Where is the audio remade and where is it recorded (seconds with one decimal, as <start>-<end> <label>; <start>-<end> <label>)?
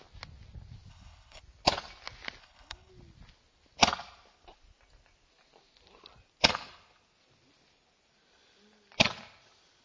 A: 0.0-0.9 recorded; 0.9-1.4 remade; 1.4-2.4 recorded; 2.4-2.9 remade; 2.9-9.8 recorded